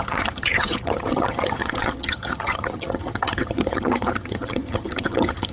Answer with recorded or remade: remade